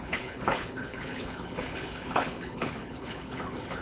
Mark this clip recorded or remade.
remade